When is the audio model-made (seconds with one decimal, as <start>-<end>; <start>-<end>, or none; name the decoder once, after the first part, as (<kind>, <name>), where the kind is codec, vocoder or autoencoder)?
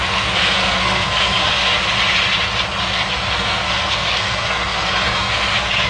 0.0-1.7 (codec, SNAC); 2.8-5.9